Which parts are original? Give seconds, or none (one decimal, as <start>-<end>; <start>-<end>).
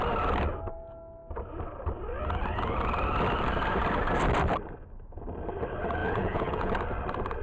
0.0-6.0; 6.7-7.4